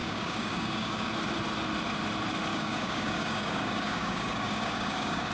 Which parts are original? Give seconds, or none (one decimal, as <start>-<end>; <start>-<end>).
1.1-2.5